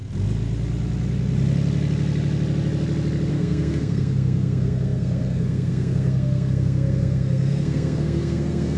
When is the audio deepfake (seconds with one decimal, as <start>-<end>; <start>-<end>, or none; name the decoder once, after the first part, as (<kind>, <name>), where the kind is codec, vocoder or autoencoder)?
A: 3.3-8.8 (codec, SNAC)